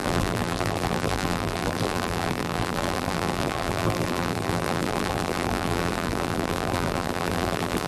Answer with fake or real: fake